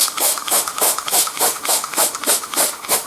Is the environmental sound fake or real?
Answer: fake